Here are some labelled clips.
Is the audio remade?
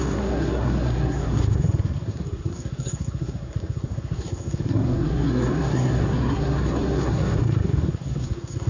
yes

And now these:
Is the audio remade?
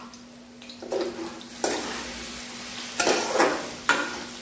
no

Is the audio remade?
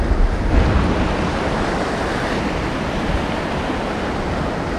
no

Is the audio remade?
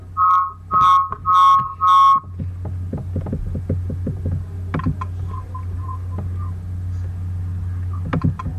no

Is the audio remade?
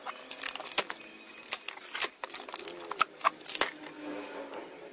no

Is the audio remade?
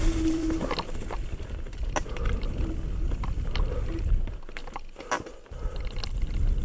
no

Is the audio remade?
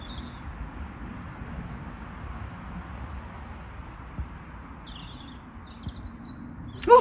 no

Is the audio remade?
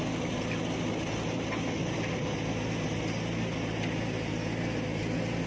no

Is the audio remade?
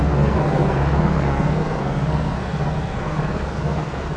yes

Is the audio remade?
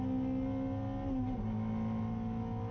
no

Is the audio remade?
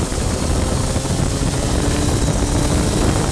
no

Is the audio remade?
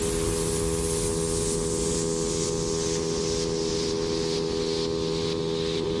no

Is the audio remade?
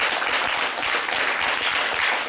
no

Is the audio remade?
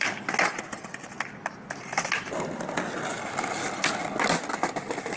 no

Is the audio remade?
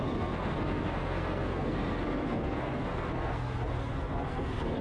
yes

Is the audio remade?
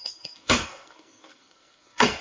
yes